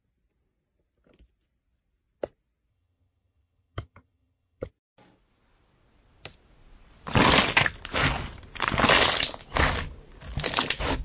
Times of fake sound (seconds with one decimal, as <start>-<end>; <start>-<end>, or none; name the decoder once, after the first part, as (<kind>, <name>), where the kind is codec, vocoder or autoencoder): 2.7-4.7 (vocoder, HiFi-GAN)